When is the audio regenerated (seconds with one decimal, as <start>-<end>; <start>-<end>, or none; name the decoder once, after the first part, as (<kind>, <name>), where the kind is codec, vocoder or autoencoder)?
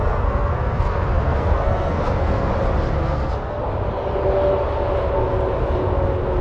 0.0-2.5 (codec, SNAC); 3.0-3.6